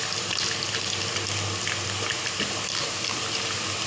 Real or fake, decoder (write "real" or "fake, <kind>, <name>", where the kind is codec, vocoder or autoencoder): real